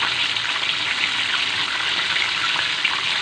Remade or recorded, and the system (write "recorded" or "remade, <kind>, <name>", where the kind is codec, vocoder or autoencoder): recorded